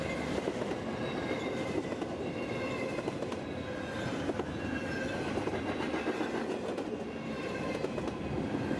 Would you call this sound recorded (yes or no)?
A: yes